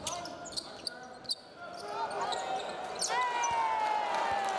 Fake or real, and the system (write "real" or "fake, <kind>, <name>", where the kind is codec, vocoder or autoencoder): real